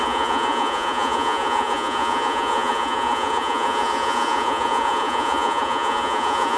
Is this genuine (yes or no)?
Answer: no